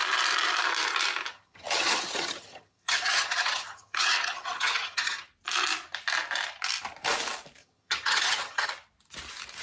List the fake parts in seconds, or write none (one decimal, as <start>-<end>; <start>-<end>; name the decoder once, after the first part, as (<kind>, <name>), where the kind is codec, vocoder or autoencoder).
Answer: 1.3-5.3 (vocoder, HiFi-GAN); 7.6-8.7